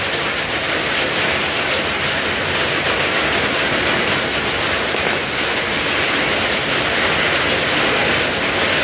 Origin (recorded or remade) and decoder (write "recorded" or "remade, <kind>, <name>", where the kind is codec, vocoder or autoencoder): recorded